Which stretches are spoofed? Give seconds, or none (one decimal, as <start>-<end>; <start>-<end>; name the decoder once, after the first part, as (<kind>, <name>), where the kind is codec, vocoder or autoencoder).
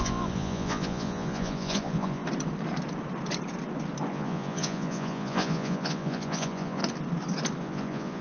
0.0-2.2 (vocoder, Vocos); 4.1-6.8; 7.6-8.2